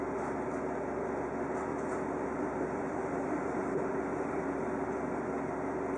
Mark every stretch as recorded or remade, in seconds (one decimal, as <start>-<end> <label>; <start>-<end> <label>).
0.0-1.7 recorded; 1.7-4.4 remade; 4.4-6.0 recorded